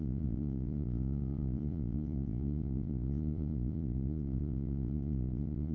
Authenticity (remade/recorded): remade